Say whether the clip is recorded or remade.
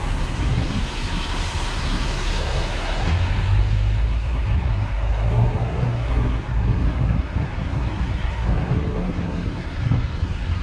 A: remade